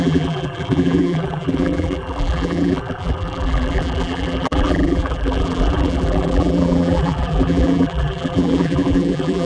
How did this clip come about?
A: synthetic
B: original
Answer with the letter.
A